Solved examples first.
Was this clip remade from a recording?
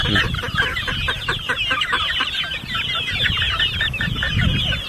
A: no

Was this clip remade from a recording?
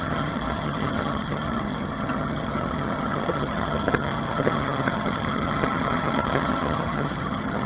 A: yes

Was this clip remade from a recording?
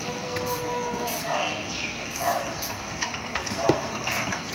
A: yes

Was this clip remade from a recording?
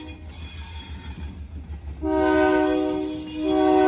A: no